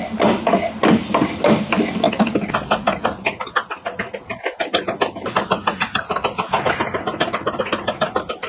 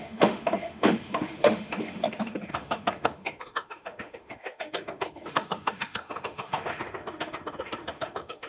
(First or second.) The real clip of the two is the first